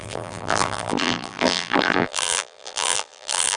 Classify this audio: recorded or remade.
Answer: remade